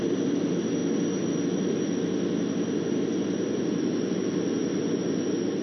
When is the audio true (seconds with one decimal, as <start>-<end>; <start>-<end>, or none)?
0.0-5.6